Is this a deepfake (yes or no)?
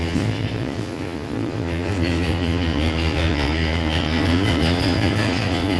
yes